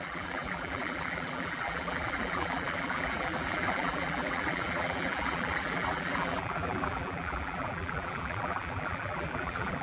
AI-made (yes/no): yes